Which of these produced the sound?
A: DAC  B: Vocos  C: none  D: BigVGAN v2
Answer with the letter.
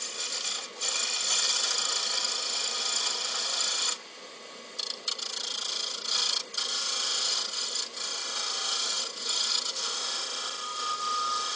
C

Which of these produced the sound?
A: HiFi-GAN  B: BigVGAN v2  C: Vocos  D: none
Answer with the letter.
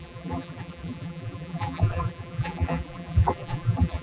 B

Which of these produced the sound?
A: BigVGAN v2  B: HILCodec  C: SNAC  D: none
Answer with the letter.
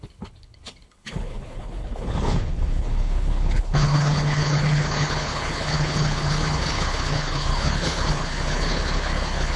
B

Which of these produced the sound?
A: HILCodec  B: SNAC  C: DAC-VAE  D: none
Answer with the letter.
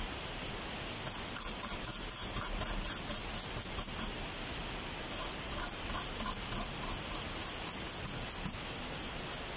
D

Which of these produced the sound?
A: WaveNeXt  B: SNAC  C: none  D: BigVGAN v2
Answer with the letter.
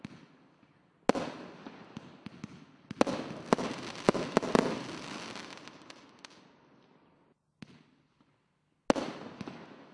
C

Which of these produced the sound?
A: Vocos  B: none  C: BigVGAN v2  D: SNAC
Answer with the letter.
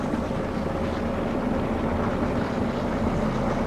B